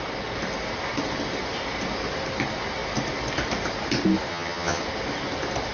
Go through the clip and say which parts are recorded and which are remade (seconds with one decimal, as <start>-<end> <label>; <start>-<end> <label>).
0.0-4.3 recorded; 4.3-4.8 remade; 4.8-5.7 recorded